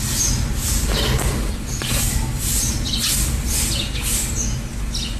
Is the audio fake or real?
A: real